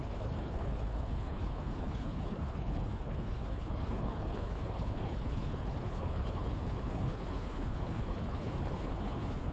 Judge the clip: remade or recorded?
remade